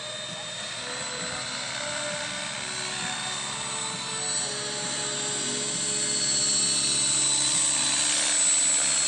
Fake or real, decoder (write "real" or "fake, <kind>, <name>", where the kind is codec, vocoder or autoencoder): real